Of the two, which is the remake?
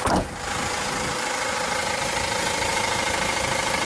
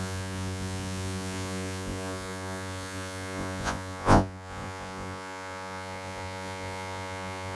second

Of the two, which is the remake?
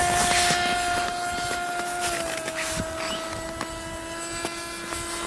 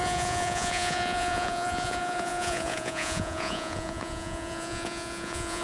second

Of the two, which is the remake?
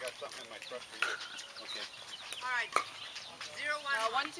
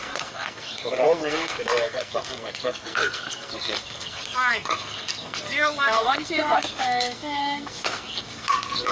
second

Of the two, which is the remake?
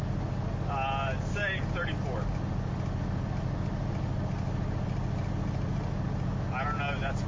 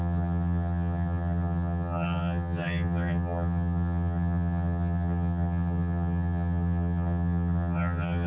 second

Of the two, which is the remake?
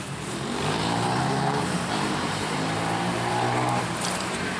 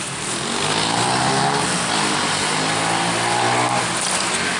first